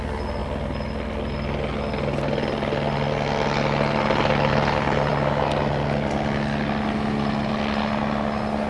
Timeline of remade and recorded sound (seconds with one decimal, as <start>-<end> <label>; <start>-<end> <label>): 0.0-8.7 recorded